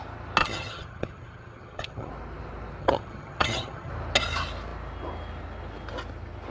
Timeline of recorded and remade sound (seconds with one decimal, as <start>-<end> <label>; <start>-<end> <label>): 0.0-0.4 recorded; 0.4-2.1 remade; 2.1-2.8 recorded; 2.8-3.9 remade; 3.9-6.5 recorded